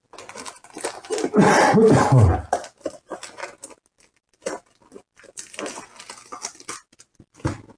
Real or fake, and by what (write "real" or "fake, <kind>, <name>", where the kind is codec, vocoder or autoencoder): real